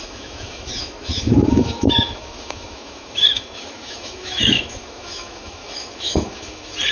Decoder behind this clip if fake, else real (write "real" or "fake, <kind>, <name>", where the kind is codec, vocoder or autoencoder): fake, autoencoder, DAC-VAE